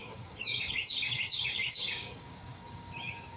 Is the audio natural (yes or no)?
no